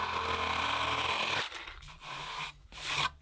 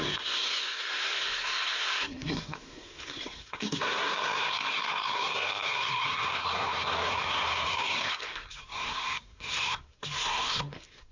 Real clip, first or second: first